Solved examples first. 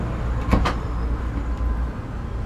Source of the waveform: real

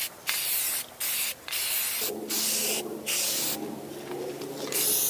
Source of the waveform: real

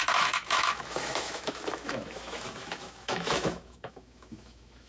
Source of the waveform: fake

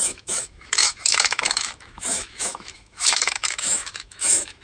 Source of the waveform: fake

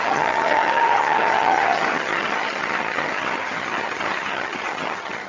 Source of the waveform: fake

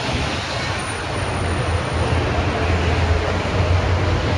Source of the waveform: real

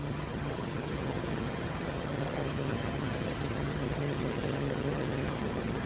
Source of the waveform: fake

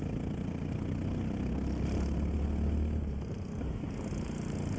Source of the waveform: real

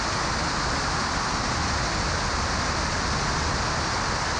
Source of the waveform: real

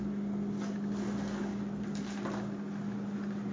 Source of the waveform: real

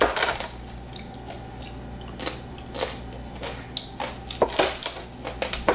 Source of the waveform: real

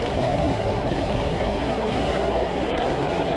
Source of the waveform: fake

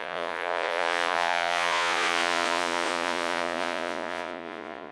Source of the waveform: fake